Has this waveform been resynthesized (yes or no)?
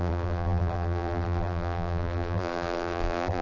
yes